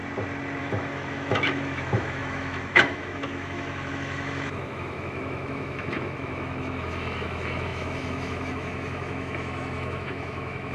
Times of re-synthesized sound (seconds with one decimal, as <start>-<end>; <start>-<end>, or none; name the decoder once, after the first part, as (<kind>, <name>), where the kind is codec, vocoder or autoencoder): 0.6-10.7 (autoencoder, DAC-VAE)